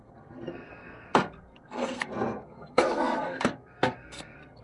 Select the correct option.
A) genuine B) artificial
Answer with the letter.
B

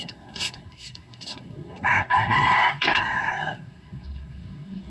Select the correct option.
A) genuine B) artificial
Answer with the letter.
B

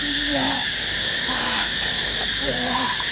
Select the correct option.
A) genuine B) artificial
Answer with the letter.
B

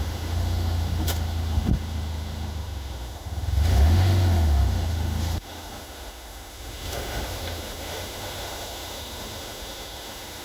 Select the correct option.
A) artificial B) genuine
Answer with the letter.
A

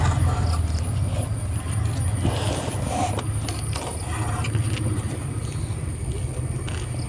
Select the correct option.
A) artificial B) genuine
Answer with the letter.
B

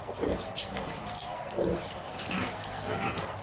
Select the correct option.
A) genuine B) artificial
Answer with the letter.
B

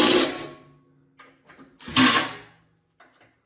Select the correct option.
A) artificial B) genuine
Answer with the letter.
B